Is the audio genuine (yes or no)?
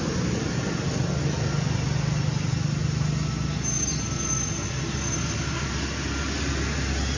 yes